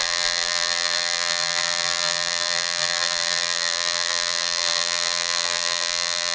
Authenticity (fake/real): fake